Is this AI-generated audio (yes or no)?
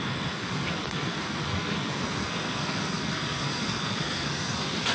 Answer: yes